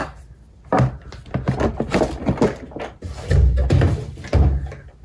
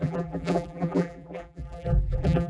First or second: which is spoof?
second